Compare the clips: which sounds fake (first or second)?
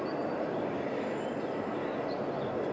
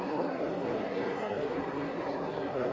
second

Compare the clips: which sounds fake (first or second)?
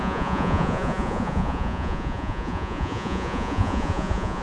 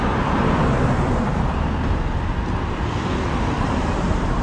first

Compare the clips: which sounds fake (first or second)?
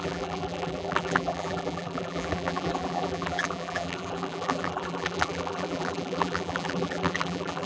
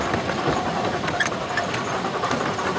first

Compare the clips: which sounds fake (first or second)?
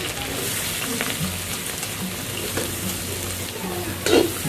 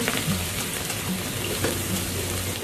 second